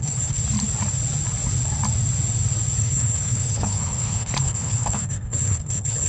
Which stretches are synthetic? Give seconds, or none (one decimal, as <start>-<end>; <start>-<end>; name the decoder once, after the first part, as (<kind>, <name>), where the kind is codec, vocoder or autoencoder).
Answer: 0.0-0.4 (codec, HILCodec); 2.8-6.1